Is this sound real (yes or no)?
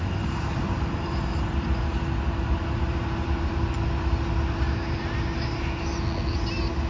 yes